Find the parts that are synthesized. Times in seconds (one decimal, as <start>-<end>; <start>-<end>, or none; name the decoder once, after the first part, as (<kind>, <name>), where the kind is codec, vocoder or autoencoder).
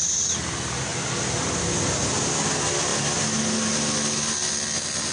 none